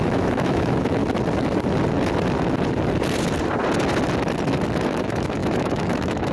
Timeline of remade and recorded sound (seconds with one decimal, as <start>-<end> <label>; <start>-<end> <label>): 0.0-1.0 remade; 1.0-4.8 recorded; 4.8-6.3 remade